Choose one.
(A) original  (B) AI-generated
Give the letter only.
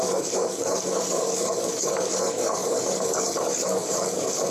B